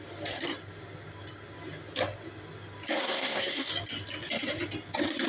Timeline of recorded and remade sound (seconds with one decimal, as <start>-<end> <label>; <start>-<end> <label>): 0.0-3.0 recorded; 3.0-3.7 remade; 3.7-5.3 recorded